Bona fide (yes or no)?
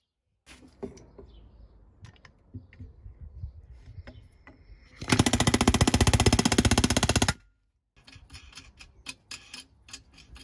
yes